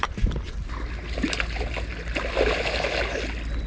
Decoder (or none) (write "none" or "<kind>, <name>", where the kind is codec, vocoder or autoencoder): none